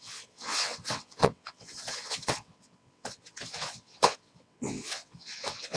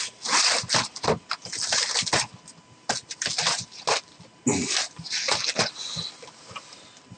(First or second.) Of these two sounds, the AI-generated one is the first